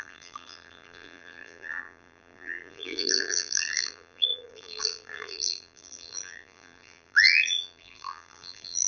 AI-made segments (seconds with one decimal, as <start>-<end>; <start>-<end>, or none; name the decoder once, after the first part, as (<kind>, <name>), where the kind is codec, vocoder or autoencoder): 0.0-8.9 (vocoder, BigVGAN v2)